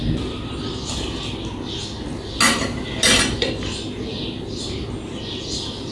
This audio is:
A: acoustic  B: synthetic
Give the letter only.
A